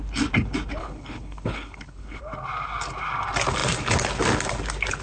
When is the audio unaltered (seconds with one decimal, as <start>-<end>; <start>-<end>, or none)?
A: 0.0-0.8; 2.2-5.0